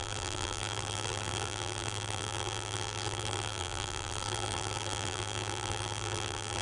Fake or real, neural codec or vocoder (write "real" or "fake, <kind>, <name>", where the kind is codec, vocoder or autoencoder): fake, vocoder, BigVGAN v2